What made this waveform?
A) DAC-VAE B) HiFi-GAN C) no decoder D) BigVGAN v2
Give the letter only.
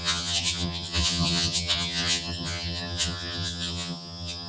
B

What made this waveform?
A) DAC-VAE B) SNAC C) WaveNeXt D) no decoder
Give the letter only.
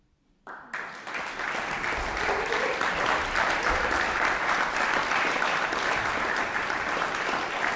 D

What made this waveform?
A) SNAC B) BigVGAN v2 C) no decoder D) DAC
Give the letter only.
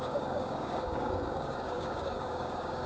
D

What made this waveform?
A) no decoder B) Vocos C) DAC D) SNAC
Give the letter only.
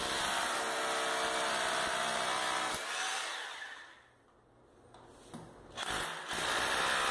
A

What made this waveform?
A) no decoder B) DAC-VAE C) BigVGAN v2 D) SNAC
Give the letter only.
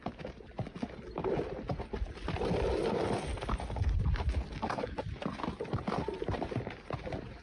A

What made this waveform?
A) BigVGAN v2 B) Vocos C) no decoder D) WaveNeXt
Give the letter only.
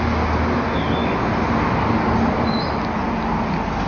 C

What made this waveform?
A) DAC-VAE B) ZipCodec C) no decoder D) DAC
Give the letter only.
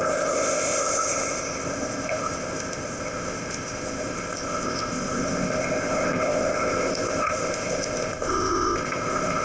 B